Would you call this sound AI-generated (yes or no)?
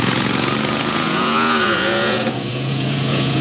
yes